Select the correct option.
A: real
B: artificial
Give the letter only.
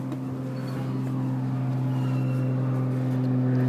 A